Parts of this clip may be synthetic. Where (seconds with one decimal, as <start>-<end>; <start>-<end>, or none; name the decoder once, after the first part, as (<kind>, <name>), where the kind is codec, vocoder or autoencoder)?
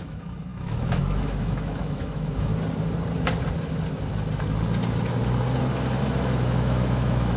0.0-2.5 (autoencoder, DAC-VAE); 6.0-7.4